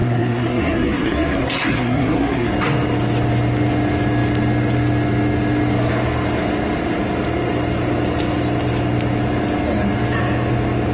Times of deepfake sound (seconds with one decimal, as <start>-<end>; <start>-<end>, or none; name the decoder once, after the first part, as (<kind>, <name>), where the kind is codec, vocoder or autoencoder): 0.0-2.5 (codec, SNAC)